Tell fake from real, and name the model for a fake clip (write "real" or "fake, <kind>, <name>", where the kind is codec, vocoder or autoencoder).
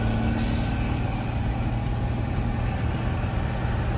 real